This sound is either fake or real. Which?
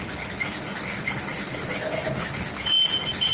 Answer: real